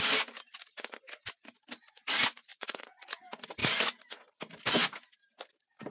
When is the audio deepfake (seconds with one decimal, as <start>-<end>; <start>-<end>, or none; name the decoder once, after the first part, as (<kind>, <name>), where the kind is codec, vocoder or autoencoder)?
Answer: 2.5-3.2 (vocoder, Vocos)